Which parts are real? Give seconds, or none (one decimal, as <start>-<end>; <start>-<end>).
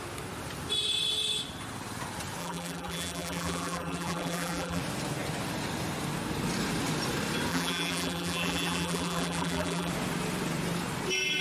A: 0.0-2.4; 4.8-7.5; 9.9-11.4